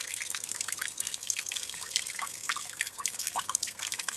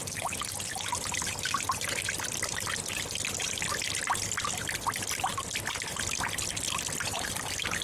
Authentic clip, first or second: second